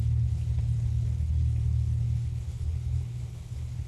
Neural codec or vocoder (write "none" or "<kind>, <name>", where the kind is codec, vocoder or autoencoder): codec, HILCodec